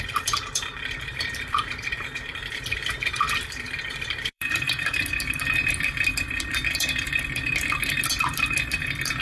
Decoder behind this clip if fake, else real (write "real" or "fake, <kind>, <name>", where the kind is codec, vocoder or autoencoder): fake, vocoder, BigVGAN v2